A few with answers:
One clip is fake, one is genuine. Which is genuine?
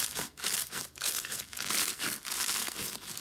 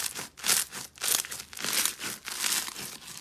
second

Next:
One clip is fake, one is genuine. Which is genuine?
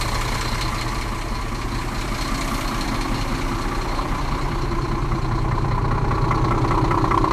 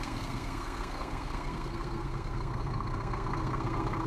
first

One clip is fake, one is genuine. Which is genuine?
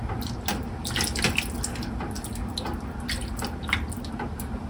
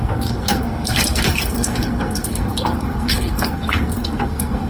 first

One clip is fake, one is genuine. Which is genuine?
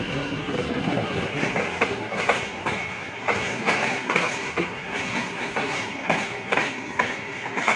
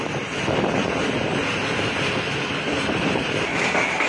second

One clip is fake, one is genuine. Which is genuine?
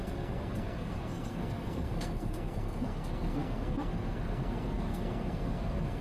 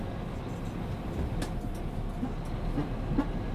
second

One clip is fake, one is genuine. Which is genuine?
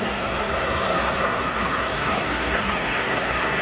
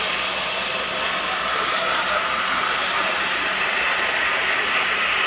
second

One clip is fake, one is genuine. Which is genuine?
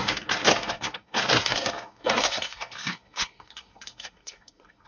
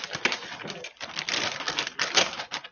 second